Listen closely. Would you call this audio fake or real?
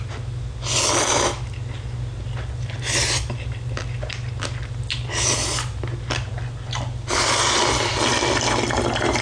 real